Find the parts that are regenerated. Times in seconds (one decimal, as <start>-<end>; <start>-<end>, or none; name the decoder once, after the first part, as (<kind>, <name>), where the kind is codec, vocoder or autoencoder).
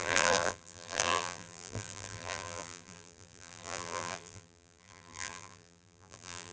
0.0-6.5 (vocoder, BigVGAN v2)